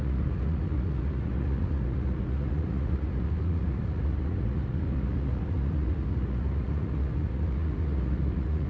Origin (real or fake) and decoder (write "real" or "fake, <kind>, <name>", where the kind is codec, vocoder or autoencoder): fake, vocoder, Vocos